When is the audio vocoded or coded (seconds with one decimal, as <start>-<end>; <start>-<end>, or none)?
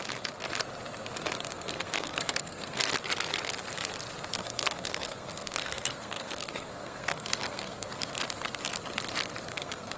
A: 1.5-2.9; 4.4-8.0; 9.5-10.0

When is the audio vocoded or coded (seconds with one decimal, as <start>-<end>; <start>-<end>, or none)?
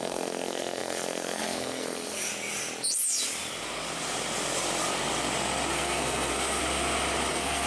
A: 0.0-2.3; 5.7-6.6; 7.3-7.7